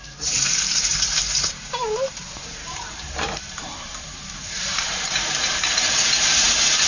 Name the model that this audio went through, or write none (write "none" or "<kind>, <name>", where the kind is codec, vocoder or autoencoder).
vocoder, BigVGAN v2